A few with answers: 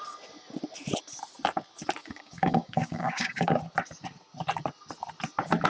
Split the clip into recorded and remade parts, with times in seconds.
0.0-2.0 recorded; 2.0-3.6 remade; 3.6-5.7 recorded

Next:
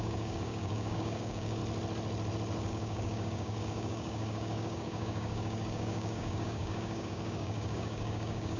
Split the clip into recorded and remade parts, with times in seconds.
0.0-1.6 remade; 1.6-2.7 recorded; 2.7-8.6 remade

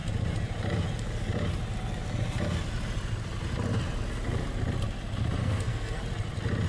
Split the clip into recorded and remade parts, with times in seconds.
0.0-5.4 recorded; 5.4-6.0 remade; 6.0-6.7 recorded